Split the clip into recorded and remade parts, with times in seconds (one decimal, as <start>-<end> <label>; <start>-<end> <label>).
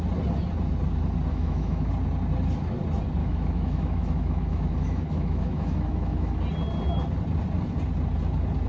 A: 0.0-1.3 recorded; 1.3-1.9 remade; 1.9-3.2 recorded; 3.2-6.4 remade; 6.4-8.7 recorded